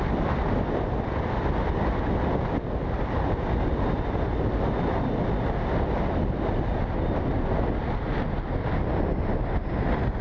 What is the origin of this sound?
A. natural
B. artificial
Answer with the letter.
A